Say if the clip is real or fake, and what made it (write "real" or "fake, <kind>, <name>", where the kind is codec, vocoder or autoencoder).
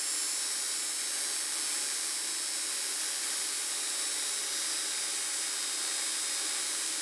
real